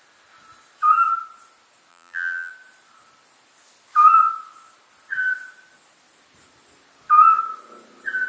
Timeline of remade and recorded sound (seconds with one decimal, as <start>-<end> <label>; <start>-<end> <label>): 0.0-1.9 recorded; 1.9-2.5 remade; 2.5-8.3 recorded